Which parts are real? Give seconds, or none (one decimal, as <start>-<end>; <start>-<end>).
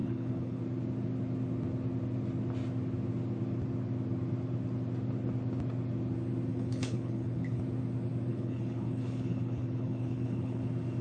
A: 0.6-6.5; 7.6-8.3; 10.6-11.0